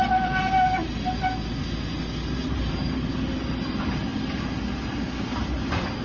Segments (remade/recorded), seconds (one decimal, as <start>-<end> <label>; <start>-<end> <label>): 0.0-6.0 recorded